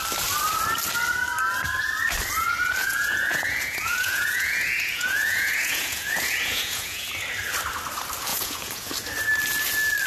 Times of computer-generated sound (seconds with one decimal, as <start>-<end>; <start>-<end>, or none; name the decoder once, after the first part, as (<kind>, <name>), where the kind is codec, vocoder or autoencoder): 2.8-7.1 (vocoder, Vocos); 8.3-8.9